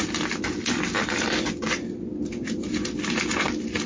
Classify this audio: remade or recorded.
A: recorded